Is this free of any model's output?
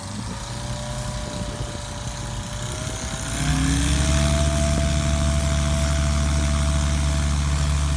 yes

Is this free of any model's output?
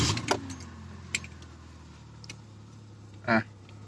yes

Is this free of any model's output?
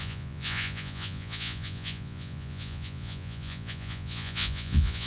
no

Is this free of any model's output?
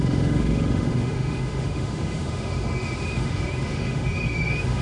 no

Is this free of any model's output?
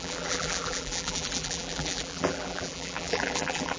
no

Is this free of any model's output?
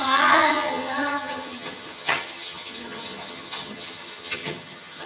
no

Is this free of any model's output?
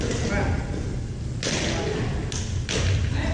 yes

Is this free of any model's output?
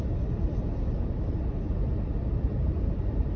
yes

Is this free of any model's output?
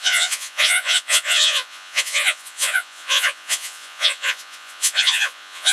no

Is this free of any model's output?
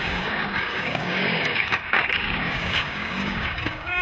no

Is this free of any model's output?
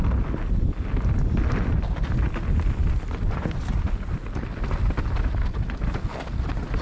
yes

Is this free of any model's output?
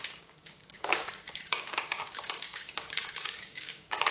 no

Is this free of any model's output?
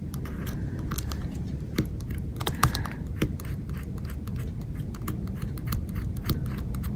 no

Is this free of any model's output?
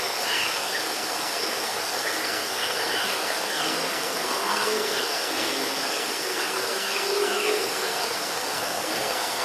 no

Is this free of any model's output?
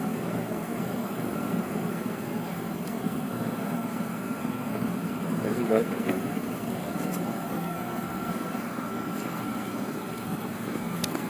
no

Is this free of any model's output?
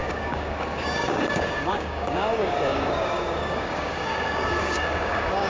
no